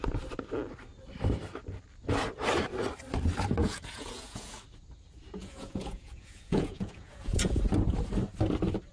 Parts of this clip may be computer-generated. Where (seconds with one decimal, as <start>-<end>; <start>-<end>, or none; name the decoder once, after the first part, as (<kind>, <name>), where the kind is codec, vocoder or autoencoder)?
3.6-4.6 (vocoder, Vocos); 5.4-7.6

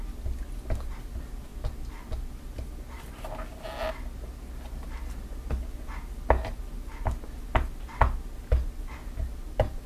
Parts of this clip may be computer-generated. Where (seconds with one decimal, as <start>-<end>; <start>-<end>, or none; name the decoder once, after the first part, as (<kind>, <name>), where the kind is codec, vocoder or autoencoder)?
none